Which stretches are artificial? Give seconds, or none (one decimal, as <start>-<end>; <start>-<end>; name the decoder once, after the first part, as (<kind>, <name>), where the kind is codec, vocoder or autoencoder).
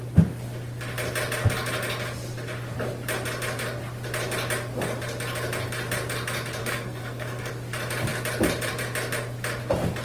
6.6-7.5 (codec, SNAC)